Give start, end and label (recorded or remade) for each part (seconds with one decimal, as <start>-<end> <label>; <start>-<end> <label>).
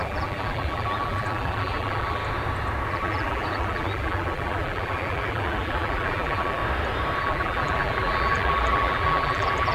0.0-2.2 remade; 2.2-2.9 recorded; 2.9-6.6 remade; 6.6-7.2 recorded; 7.2-9.7 remade